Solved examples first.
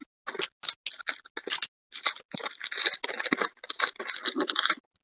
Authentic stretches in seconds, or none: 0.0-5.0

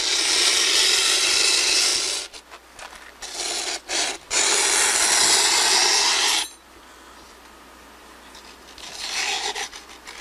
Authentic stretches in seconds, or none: 0.0-10.2

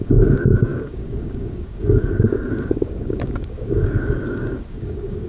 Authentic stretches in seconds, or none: none